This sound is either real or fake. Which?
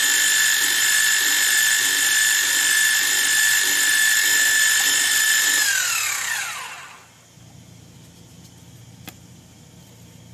real